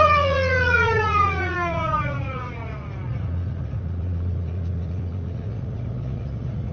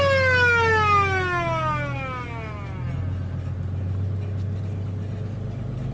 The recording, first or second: second